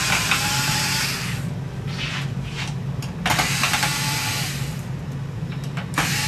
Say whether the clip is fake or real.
real